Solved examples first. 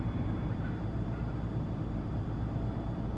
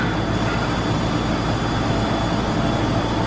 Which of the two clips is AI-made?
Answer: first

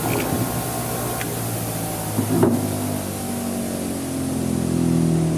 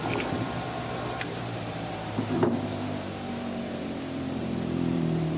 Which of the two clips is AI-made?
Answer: second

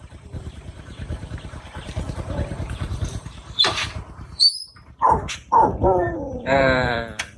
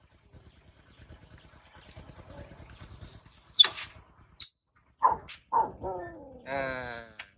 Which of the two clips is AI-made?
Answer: first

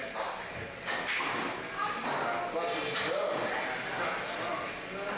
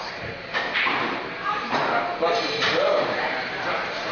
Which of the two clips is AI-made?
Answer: second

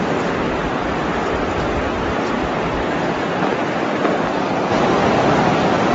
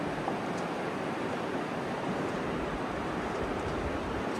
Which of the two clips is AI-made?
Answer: second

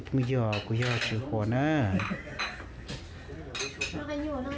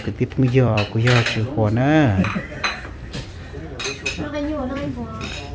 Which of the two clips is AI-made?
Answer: second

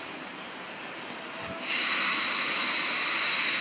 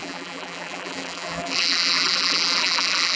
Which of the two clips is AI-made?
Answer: second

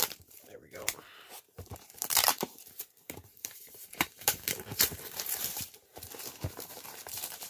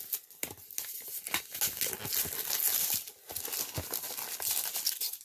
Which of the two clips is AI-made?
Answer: first